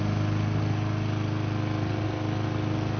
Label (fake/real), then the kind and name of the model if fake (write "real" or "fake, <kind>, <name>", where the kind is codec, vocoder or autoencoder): real